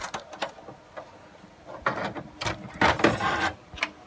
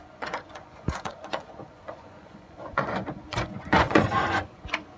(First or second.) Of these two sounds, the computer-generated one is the second